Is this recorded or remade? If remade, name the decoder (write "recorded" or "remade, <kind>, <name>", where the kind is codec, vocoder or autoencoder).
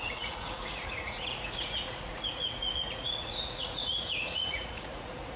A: remade, vocoder, Vocos